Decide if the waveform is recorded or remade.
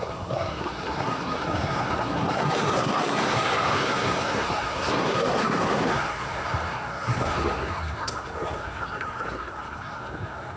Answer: remade